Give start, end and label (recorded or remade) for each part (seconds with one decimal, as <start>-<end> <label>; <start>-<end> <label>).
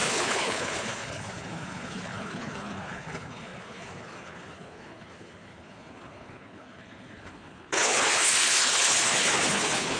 0.0-10.0 remade